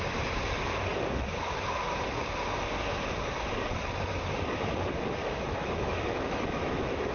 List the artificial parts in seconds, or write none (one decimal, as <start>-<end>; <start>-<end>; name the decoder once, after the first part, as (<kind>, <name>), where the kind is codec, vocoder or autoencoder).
5.2-7.1 (autoencoder, DAC-VAE)